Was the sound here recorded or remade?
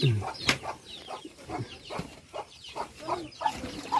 remade